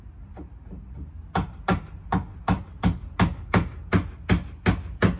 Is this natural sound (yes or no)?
yes